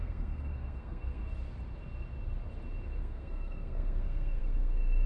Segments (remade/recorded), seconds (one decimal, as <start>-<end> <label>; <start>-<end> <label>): 0.0-1.2 remade; 1.2-3.0 recorded; 3.0-5.1 remade